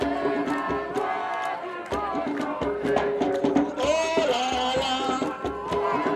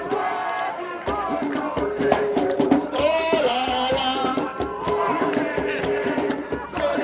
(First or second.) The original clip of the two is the first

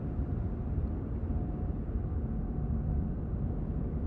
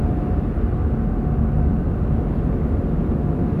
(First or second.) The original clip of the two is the second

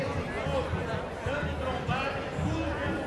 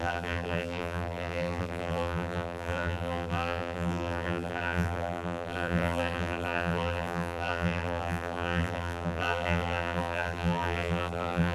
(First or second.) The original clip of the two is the first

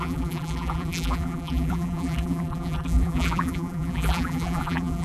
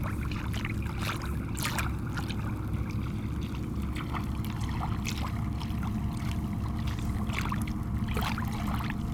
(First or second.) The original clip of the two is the second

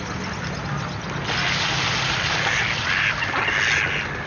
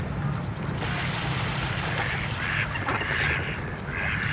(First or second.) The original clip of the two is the first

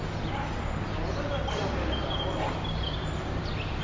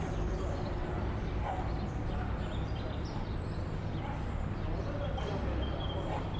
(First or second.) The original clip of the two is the first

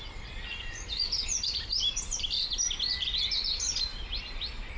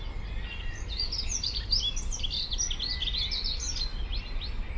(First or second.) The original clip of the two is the second